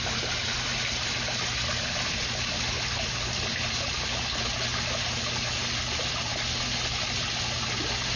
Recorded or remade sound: recorded